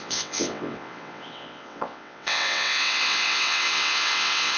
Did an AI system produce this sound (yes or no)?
yes